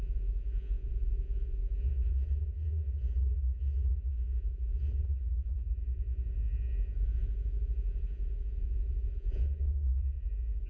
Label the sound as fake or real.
fake